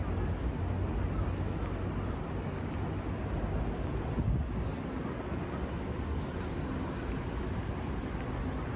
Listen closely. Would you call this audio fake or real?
real